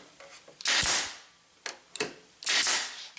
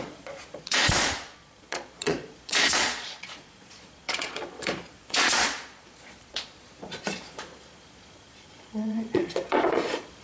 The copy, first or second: second